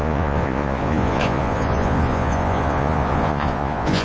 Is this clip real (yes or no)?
no